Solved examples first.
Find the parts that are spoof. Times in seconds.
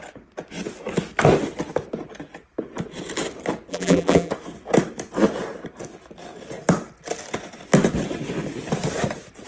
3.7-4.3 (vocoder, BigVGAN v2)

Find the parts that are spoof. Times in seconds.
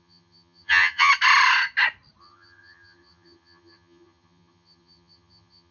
0.0-1.1 (vocoder, HiFi-GAN); 2.2-5.7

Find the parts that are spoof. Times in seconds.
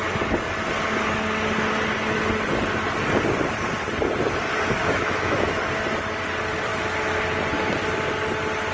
4.8-5.6 (autoencoder, DAC-VAE)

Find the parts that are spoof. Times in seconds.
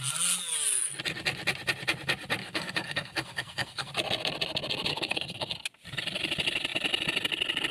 2.4-3.9 (codec, SNAC); 4.9-5.5